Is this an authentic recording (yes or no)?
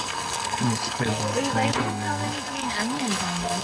no